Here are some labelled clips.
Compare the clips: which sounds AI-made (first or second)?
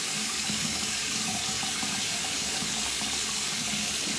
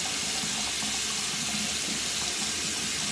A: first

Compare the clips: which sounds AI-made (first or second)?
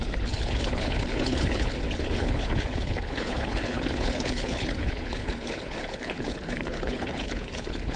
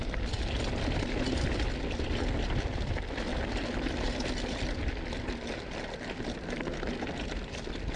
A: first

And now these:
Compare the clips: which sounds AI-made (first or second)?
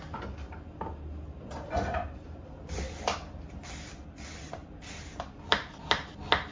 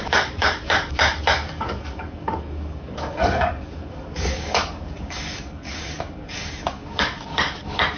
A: second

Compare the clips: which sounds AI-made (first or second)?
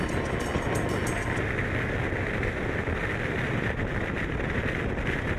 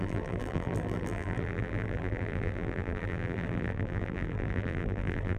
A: second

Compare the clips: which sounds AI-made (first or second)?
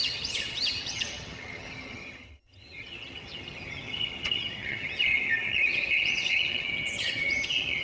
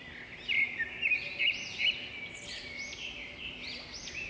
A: first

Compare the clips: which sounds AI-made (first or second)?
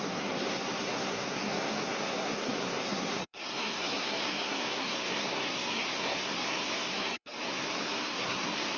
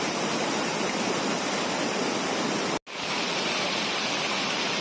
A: first